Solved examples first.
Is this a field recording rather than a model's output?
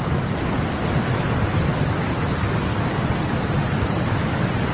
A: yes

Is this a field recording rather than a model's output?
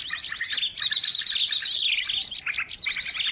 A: yes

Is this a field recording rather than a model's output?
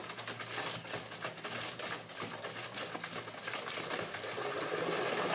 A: yes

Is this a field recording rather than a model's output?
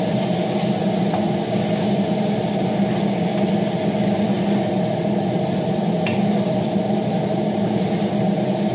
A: yes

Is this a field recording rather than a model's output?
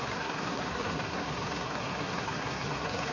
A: no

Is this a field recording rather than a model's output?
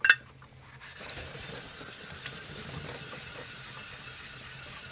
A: yes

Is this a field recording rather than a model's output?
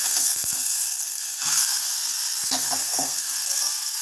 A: no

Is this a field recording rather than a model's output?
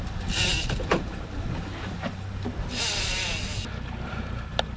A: yes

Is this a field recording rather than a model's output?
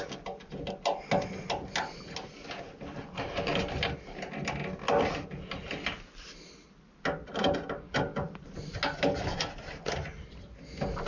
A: yes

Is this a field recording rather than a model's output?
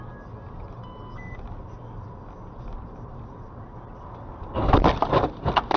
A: yes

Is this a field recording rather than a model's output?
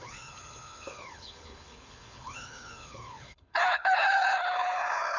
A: no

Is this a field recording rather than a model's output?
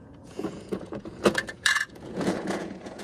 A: no